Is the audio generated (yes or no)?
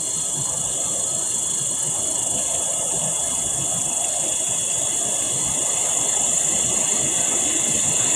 no